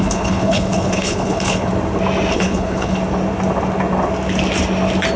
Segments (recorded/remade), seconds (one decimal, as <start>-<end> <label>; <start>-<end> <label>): 0.0-1.7 remade; 1.7-2.3 recorded; 2.3-3.0 remade; 3.0-5.2 recorded